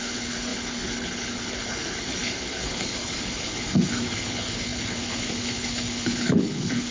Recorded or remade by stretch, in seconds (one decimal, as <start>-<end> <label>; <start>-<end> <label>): 0.0-6.9 remade

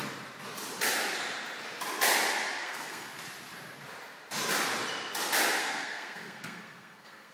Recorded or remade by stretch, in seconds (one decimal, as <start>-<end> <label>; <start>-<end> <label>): 0.0-2.6 recorded; 2.6-3.2 remade; 3.2-5.6 recorded; 5.6-7.3 remade

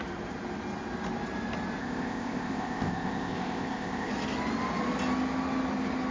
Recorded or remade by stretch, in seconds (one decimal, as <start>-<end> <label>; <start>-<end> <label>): 0.0-1.8 recorded; 1.8-4.1 remade; 4.1-6.1 recorded